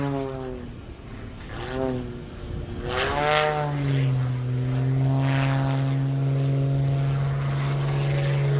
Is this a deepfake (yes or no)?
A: no